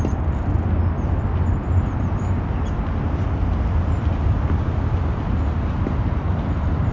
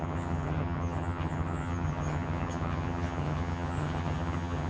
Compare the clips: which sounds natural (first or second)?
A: first